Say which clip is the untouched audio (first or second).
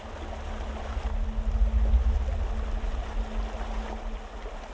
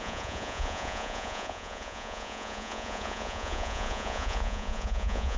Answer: first